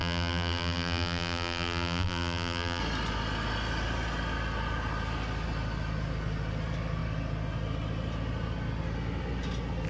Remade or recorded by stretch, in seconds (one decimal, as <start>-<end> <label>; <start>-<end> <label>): 0.0-2.8 remade; 2.8-9.9 recorded